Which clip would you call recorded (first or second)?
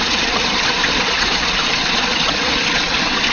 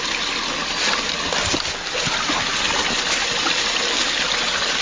second